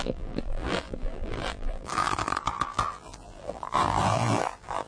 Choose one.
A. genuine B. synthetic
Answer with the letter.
B